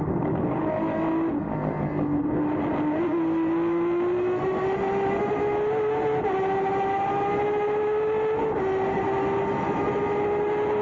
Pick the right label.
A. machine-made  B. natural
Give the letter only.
B